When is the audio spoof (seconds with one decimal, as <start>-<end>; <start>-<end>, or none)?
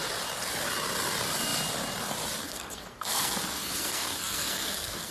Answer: 2.4-5.1